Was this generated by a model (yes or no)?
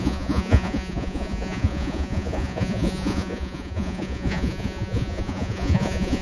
yes